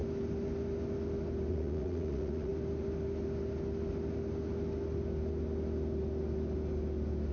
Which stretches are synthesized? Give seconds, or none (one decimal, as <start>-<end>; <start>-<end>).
1.5-2.5